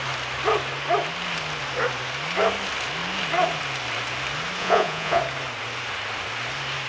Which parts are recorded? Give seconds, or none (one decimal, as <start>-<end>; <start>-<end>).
0.0-4.6; 5.2-6.9